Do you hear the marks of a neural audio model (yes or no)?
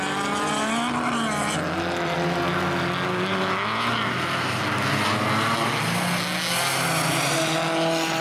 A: no